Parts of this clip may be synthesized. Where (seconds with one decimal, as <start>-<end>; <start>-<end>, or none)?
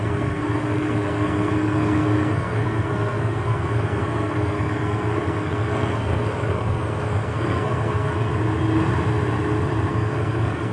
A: 0.0-8.3; 9.9-10.7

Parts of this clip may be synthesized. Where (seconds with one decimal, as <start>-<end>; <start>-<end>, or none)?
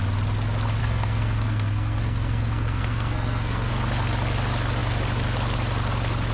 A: 0.8-3.7